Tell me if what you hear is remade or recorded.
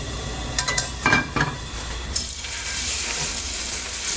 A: remade